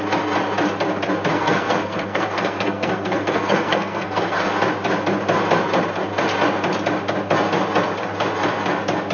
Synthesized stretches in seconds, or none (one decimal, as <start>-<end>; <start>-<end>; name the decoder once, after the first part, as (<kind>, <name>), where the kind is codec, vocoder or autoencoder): 1.3-4.5 (codec, SNAC)